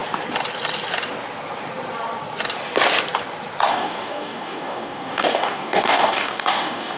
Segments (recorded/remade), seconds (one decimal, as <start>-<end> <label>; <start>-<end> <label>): 0.0-3.7 recorded; 3.7-7.0 remade